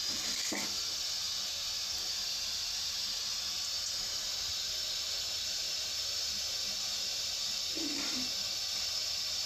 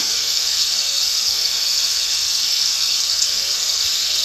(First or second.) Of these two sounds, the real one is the first